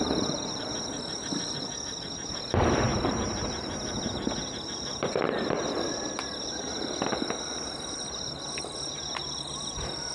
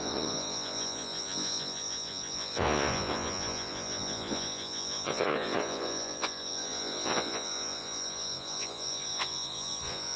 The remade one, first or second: second